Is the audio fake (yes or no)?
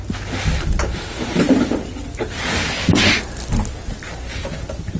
no